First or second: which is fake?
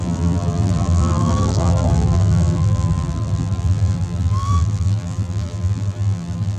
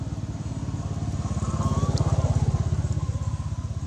first